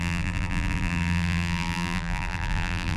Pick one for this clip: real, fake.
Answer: fake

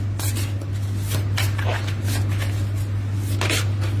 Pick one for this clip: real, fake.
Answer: real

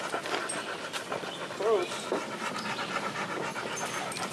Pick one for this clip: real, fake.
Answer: real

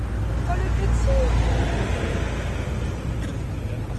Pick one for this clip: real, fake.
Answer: real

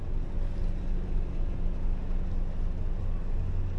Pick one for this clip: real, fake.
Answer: real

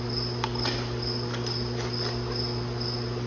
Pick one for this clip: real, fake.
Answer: real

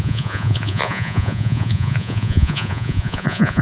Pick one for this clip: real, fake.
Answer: fake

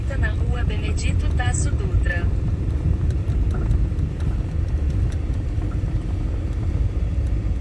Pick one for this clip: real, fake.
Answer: fake